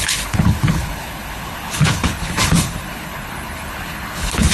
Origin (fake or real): fake